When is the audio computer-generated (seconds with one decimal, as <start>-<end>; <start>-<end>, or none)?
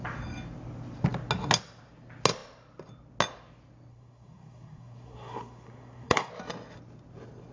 3.9-6.3